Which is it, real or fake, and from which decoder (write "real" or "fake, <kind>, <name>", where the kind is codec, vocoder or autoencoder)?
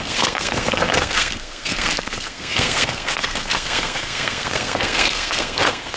fake, codec, SNAC